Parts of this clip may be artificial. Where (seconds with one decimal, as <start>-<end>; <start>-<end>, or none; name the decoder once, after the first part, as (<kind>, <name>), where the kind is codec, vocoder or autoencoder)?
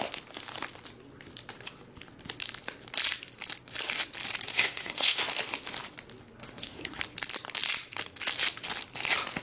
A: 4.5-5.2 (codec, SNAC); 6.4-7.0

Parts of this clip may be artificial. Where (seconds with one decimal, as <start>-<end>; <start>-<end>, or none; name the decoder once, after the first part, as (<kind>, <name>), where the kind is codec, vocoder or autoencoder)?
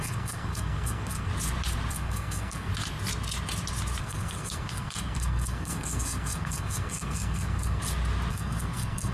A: 0.0-1.3 (codec, SNAC); 1.9-2.7; 4.0-7.8; 8.3-9.1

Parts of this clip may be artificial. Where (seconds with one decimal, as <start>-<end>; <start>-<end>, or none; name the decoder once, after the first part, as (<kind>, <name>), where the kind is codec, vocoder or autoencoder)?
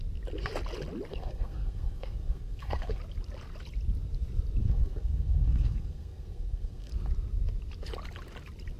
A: 1.1-3.0 (codec, SNAC); 4.6-6.9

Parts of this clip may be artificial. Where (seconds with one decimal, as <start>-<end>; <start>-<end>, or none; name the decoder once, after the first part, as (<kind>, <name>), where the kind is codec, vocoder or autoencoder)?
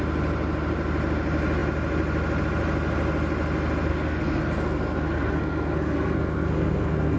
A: 3.9-7.2 (codec, SNAC)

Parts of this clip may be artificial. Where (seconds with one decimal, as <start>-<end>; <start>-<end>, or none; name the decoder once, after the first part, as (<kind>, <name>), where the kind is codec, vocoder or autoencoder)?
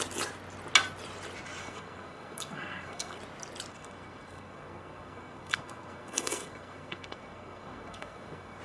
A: 1.6-3.2 (codec, SNAC); 3.7-8.6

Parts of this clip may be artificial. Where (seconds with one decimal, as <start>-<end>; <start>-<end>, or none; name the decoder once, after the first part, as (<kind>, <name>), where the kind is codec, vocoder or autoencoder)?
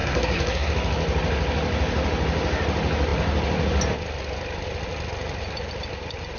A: 0.0-0.7 (codec, SNAC)